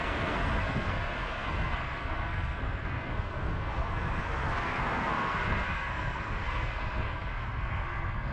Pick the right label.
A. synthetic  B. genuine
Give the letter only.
A